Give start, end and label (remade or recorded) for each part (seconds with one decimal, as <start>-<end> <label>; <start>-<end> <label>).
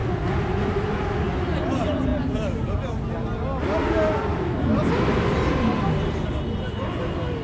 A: 0.0-4.3 recorded; 4.3-4.8 remade; 4.8-7.4 recorded